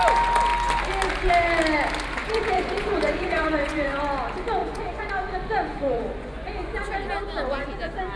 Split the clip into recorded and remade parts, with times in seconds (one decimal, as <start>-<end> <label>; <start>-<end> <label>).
0.0-2.2 recorded; 2.2-4.0 remade; 4.0-4.6 recorded; 4.6-5.3 remade; 5.3-5.7 recorded; 5.7-6.8 remade; 6.8-8.2 recorded